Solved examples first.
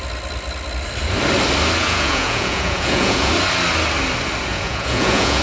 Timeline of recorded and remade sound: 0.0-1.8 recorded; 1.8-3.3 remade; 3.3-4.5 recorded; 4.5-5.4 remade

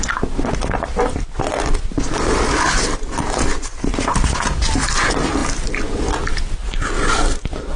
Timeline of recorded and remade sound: 0.0-7.8 recorded

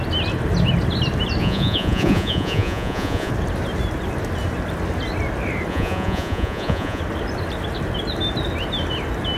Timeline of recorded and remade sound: 0.0-1.4 recorded; 1.4-3.3 remade; 3.3-5.7 recorded; 5.7-7.0 remade; 7.0-9.4 recorded

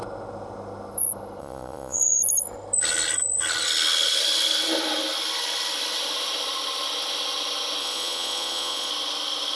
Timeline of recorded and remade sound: 0.0-1.4 recorded; 1.4-2.0 remade; 2.0-7.8 recorded; 7.8-8.9 remade; 8.9-9.6 recorded

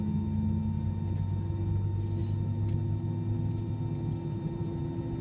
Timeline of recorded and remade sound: 0.0-5.2 recorded